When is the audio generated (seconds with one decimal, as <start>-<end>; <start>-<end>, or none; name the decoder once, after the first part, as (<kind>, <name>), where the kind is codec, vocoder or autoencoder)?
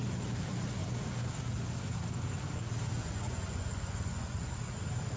3.0-4.5 (vocoder, Vocos)